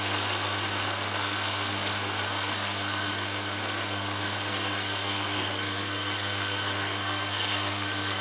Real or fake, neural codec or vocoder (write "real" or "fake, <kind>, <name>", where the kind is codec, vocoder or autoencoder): fake, codec, SNAC